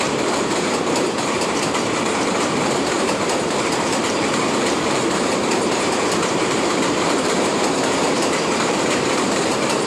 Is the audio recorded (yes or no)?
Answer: no